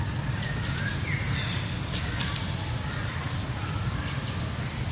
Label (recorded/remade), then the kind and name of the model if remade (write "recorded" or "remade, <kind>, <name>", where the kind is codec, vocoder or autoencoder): recorded